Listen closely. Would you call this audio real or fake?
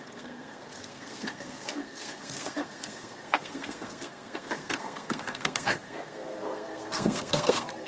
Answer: fake